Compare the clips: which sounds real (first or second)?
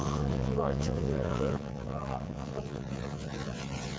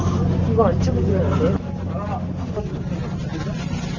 second